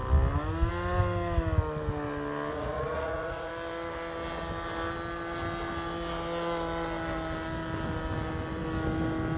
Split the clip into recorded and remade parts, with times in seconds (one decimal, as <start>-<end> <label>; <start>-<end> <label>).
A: 0.0-2.5 recorded; 2.5-3.5 remade; 3.5-9.4 recorded